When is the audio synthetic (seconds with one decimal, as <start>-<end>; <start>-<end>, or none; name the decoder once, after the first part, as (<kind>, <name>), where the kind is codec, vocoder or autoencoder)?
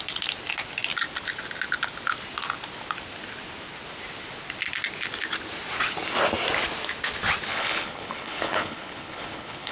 7.5-9.7 (codec, HILCodec)